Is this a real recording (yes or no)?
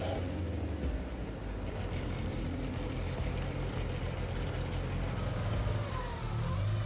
yes